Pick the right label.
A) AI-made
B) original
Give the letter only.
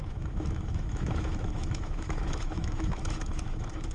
A